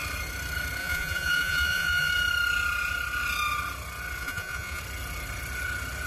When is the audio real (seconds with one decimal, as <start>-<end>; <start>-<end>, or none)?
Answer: 0.0-0.8; 2.1-4.2; 4.8-6.1

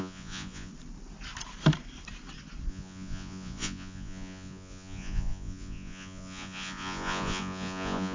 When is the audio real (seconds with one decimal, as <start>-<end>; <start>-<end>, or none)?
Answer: 0.7-2.7